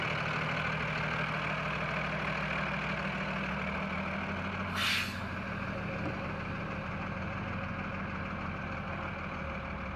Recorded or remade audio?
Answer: recorded